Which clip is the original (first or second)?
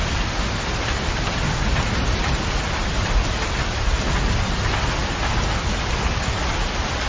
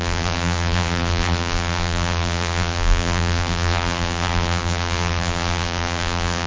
first